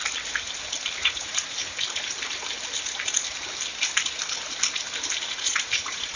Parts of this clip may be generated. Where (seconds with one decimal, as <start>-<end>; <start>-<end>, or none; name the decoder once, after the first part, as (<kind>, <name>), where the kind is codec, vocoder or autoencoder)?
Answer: 1.0-1.6 (vocoder, Vocos); 5.3-6.2